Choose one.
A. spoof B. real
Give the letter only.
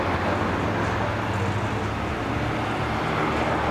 B